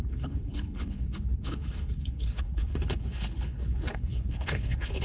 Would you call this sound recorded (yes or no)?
no